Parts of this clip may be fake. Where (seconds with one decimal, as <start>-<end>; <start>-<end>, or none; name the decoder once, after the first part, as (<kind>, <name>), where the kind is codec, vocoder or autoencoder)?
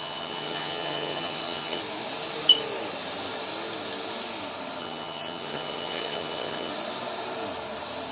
0.0-1.8 (vocoder, HiFi-GAN); 4.8-6.7